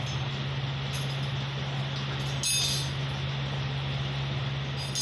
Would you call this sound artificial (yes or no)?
no